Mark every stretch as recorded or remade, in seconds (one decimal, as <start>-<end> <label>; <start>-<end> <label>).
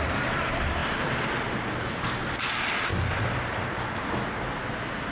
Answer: 0.0-5.1 recorded